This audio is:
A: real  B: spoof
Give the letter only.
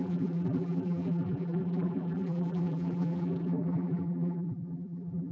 B